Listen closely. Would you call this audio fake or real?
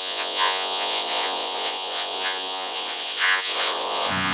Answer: fake